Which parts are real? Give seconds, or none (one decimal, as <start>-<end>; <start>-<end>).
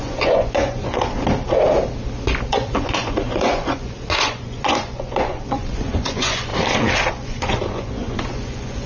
1.0-2.5; 6.5-7.1